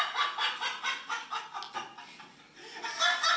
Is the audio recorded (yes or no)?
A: yes